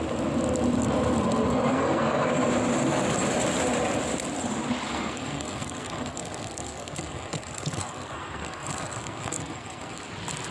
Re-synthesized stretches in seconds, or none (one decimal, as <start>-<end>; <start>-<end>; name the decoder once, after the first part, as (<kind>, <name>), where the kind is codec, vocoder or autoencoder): 1.5-2.3 (codec, SNAC); 4.9-10.1